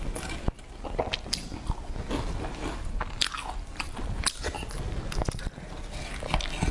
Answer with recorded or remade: recorded